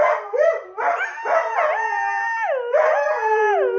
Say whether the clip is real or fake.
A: real